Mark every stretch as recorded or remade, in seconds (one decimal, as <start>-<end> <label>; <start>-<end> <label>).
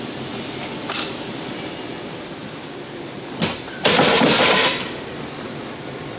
0.0-6.2 recorded